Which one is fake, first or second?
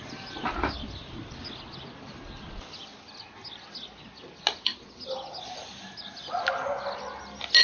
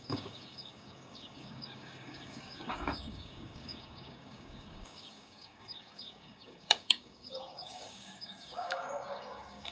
second